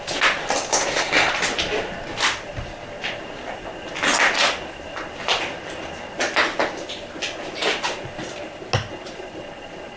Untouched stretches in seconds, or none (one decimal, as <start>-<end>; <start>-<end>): 0.0-0.7; 1.3-10.0